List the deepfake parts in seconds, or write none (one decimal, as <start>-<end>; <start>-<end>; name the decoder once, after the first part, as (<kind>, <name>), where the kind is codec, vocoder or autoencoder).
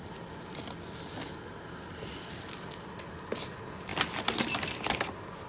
none